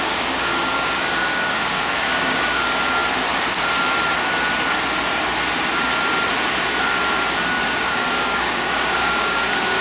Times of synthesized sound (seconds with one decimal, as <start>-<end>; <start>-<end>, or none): 0.0-3.0; 7.6-9.8